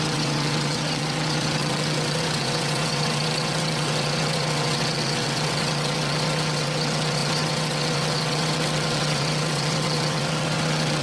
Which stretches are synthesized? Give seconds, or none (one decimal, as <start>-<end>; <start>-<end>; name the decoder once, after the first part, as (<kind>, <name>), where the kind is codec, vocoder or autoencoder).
0.0-11.0 (vocoder, WaveNeXt)